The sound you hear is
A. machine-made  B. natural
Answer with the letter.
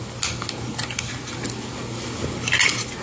B